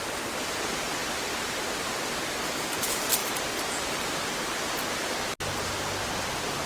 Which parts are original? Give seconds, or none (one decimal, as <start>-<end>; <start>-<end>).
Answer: 0.0-3.2; 4.6-6.7